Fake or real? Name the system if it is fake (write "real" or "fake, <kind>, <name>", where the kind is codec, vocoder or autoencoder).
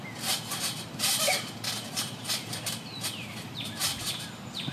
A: real